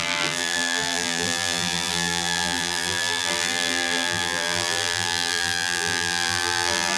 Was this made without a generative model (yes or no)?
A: no